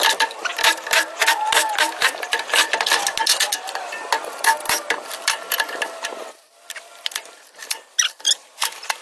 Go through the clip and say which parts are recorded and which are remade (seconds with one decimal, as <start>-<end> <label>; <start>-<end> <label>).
0.0-9.0 recorded